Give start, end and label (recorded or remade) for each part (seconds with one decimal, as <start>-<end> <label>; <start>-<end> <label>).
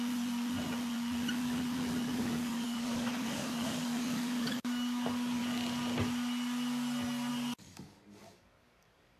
0.0-2.1 recorded; 2.1-5.4 remade; 5.4-7.3 recorded; 7.3-9.2 remade